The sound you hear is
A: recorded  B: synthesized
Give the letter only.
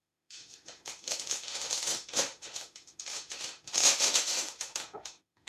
B